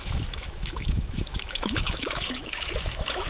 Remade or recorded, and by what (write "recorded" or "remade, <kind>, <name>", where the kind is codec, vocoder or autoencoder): remade, autoencoder, DAC-VAE